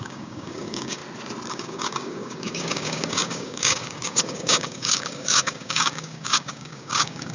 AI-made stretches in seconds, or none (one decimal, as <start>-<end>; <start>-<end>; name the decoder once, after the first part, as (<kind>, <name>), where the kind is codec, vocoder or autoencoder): 0.0-1.0 (codec, DAC); 1.5-7.3